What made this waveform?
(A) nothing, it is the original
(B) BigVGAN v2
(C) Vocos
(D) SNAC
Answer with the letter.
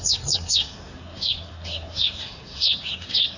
D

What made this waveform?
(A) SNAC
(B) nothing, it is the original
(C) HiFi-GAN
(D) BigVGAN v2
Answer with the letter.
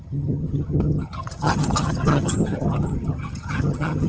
C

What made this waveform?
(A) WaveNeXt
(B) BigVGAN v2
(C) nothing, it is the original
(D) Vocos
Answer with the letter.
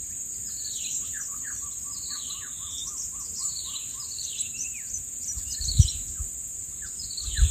B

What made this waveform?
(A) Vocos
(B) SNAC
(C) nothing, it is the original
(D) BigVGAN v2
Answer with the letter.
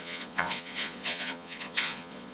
A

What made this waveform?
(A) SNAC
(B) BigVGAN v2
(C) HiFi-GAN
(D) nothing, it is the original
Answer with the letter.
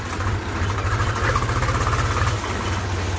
D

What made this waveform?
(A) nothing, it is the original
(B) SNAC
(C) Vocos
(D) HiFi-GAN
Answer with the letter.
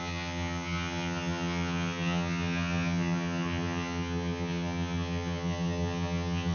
D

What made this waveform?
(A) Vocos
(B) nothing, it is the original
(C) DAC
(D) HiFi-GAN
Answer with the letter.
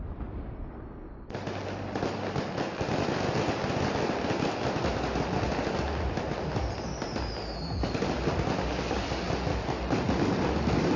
B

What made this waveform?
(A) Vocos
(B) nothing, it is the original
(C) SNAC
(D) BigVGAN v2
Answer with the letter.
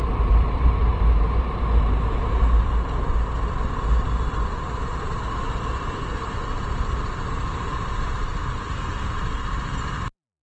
B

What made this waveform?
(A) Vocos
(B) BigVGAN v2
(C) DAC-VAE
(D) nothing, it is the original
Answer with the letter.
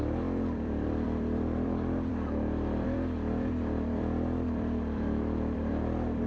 B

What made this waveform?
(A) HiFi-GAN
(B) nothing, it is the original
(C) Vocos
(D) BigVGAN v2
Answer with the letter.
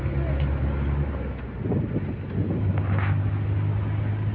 B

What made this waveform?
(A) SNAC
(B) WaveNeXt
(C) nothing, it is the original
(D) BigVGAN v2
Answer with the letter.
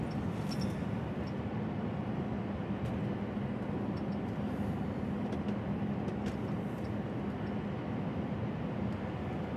C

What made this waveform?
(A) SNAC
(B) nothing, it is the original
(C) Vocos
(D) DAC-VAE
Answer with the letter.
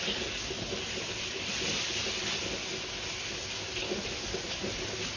B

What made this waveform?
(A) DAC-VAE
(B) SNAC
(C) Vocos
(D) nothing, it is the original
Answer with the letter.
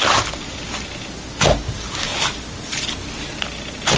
D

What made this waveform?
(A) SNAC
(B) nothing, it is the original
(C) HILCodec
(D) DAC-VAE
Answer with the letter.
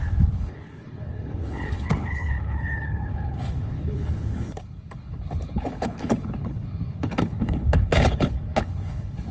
C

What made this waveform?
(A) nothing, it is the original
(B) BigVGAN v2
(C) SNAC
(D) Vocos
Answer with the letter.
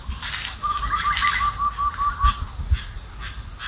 A